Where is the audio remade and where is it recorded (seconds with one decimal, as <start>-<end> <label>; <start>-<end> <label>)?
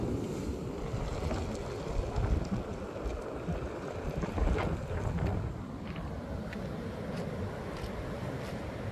0.0-8.9 recorded